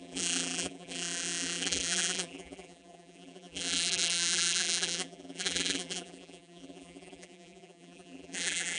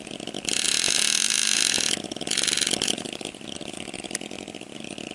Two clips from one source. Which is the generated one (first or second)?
first